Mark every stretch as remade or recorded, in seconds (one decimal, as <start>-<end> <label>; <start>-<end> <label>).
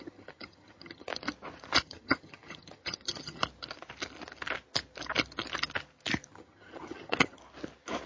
0.0-1.1 remade; 1.1-1.8 recorded; 1.8-3.4 remade; 3.4-6.3 recorded; 6.3-7.4 remade; 7.4-8.1 recorded